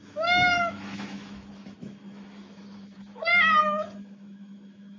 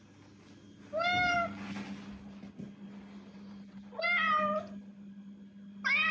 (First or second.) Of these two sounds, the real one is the second